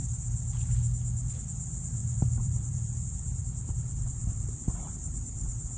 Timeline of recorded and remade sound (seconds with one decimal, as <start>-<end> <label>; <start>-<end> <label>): 0.0-2.0 recorded; 2.0-5.8 remade